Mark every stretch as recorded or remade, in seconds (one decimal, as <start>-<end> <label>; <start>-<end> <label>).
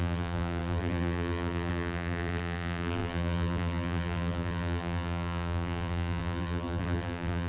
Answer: 0.0-7.5 remade